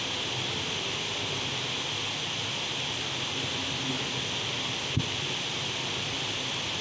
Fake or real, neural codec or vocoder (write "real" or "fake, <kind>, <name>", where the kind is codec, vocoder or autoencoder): real